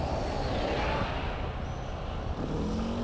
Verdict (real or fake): real